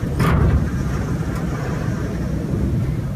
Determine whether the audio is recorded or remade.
recorded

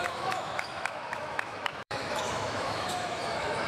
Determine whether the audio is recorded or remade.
remade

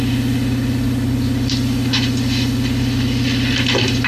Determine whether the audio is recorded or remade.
recorded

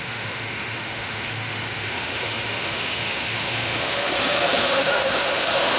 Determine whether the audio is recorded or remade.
remade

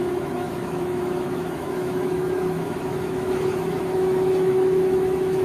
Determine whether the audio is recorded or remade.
remade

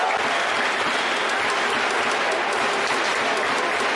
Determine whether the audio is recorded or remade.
recorded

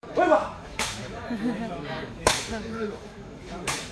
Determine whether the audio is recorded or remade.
remade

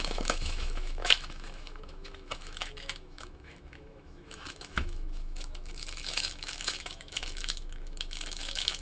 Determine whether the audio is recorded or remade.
remade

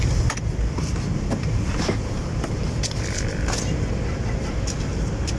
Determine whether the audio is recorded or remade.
recorded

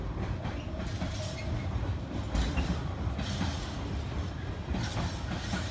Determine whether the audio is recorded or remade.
recorded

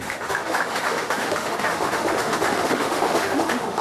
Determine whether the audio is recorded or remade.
remade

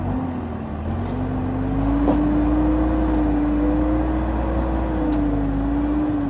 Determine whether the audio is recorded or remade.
recorded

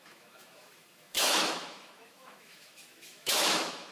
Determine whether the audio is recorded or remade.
remade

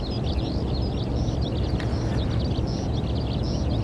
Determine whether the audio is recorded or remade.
recorded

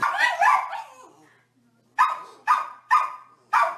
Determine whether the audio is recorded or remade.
recorded